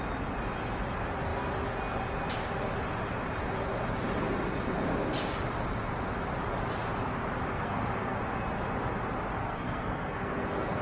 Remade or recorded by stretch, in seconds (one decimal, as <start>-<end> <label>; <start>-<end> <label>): 0.0-7.5 recorded; 7.5-8.2 remade; 8.2-9.4 recorded; 9.4-10.8 remade